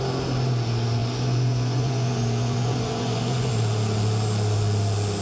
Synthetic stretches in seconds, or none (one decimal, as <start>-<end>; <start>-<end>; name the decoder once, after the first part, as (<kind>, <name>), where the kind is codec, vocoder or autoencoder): 1.0-3.5 (vocoder, Vocos)